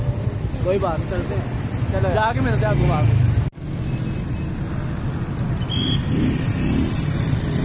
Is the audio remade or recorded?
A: recorded